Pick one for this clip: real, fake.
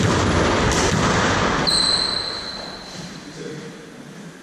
real